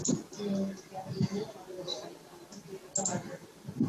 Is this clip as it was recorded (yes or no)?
yes